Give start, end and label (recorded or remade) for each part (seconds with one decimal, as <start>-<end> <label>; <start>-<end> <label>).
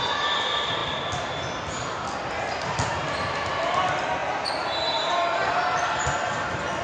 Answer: 0.0-6.8 recorded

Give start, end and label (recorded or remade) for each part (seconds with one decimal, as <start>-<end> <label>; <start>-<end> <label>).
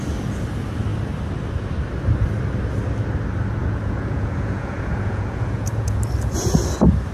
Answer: 0.0-3.6 recorded; 3.6-6.0 remade; 6.0-7.1 recorded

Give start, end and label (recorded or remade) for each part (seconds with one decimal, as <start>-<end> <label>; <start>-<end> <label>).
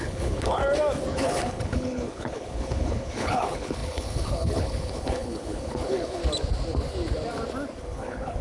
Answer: 0.0-0.6 remade; 0.6-1.1 recorded; 1.1-6.2 remade; 6.2-7.8 recorded; 7.8-8.4 remade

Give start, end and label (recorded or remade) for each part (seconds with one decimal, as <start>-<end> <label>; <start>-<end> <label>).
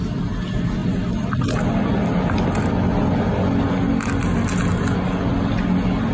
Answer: 0.0-6.1 recorded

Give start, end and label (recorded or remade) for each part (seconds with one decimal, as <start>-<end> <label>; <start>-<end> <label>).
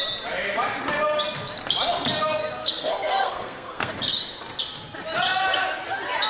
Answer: 0.0-2.6 recorded; 2.6-3.9 remade; 3.9-6.3 recorded